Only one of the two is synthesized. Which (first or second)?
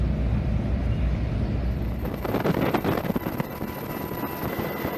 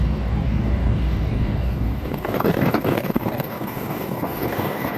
second